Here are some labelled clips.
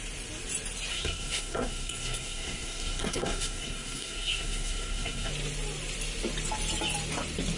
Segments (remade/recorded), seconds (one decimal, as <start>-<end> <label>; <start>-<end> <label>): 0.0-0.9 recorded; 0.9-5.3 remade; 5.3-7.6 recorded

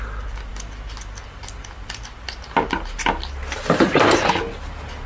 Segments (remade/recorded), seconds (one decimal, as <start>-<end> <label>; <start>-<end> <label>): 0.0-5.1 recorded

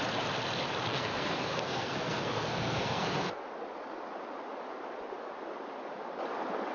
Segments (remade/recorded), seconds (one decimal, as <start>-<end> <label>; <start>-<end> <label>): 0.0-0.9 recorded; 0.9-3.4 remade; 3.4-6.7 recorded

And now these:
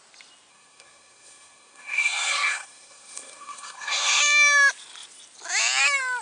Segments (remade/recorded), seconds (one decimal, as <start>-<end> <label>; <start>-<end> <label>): 0.0-0.5 recorded; 0.5-4.2 remade; 4.2-6.2 recorded

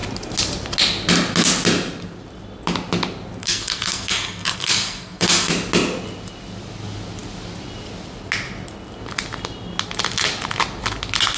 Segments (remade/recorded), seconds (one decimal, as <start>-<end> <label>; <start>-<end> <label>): 0.0-3.4 recorded; 3.4-5.5 remade; 5.5-11.4 recorded